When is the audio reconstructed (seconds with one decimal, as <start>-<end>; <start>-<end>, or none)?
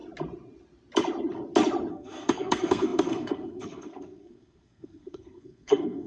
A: 1.9-6.1